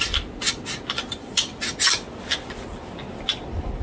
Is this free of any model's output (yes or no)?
yes